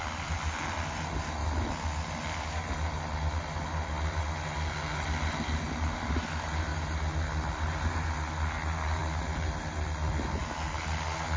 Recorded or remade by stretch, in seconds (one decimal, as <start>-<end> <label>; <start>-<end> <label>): 0.0-11.4 recorded